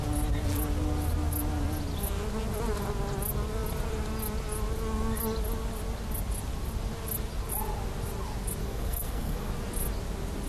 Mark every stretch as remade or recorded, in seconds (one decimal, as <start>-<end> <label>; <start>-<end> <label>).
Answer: 0.0-8.6 recorded; 8.6-9.5 remade; 9.5-10.5 recorded